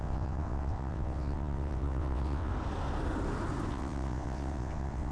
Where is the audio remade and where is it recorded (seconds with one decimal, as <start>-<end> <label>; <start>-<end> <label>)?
0.0-2.5 remade; 2.5-3.7 recorded; 3.7-5.1 remade